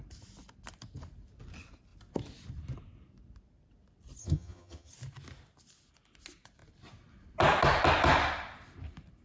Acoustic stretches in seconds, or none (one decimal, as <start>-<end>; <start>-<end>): 0.0-4.2; 4.9-9.2